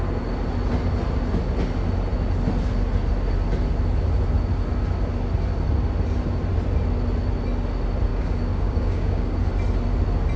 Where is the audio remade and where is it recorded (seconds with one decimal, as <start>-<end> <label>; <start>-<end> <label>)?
0.0-8.1 recorded; 8.1-9.4 remade; 9.4-10.4 recorded